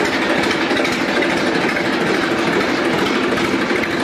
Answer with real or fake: real